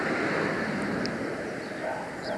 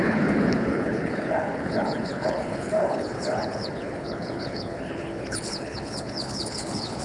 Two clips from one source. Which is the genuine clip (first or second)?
first